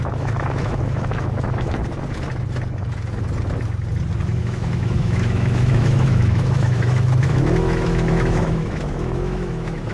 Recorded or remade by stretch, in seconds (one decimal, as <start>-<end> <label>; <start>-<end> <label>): 0.0-1.8 remade; 1.8-4.4 recorded; 4.4-9.9 remade